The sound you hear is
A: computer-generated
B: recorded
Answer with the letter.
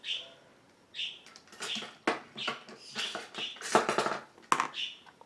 B